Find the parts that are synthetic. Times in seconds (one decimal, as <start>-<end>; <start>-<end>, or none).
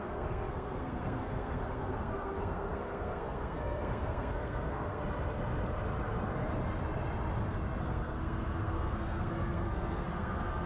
0.0-5.0; 7.8-10.7